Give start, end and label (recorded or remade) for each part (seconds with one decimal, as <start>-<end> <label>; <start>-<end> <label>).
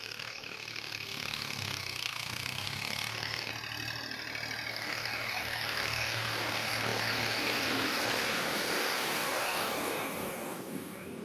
0.0-3.5 remade; 3.5-4.7 recorded; 4.7-11.2 remade